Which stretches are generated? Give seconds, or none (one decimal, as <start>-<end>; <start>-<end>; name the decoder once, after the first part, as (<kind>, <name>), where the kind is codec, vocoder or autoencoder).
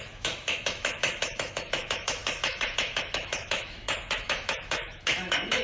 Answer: 0.0-5.6 (autoencoder, DAC-VAE)